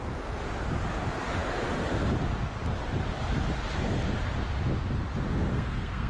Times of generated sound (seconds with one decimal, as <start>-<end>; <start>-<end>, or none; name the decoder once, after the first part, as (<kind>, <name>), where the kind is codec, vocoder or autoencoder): 5.5-6.1 (codec, SNAC)